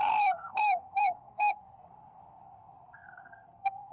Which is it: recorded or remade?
remade